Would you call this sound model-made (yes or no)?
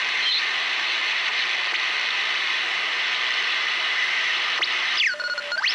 no